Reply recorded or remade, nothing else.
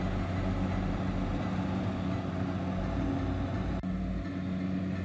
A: recorded